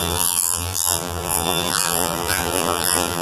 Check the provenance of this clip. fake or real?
fake